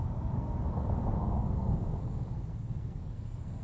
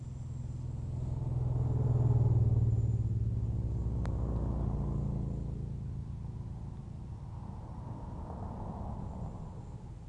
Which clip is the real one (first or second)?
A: second